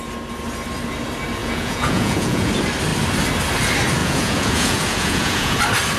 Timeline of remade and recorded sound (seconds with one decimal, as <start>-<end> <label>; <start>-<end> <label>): 0.0-1.4 recorded; 1.4-2.5 remade; 2.5-4.0 recorded; 4.0-5.6 remade; 5.6-6.0 recorded